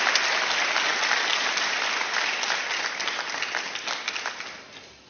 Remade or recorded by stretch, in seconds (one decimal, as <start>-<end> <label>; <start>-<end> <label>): 0.0-0.9 recorded; 0.9-2.6 remade; 2.6-5.1 recorded